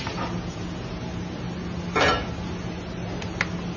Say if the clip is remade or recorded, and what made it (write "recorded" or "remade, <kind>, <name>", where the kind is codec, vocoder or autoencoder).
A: recorded